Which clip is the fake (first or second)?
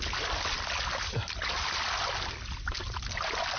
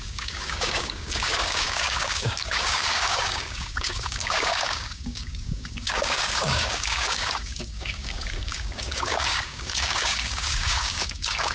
second